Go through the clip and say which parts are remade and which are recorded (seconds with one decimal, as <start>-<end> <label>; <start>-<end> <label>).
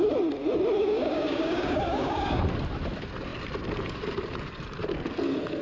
0.0-0.8 recorded; 0.8-2.4 remade; 2.4-5.6 recorded